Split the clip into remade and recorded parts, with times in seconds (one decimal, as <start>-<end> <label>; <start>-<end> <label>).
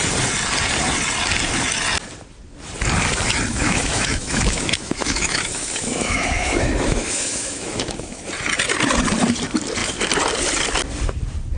0.0-3.5 recorded; 3.5-8.2 remade; 8.2-11.6 recorded